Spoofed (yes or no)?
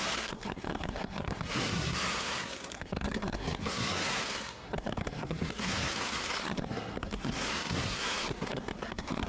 yes